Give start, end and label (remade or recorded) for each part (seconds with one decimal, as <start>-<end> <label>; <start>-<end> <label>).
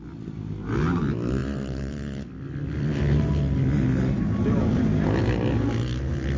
0.0-6.4 recorded